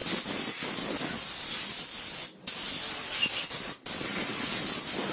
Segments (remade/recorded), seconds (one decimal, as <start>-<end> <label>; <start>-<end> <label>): 0.0-5.1 recorded